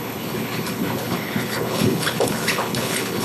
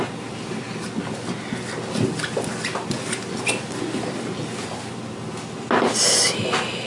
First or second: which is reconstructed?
first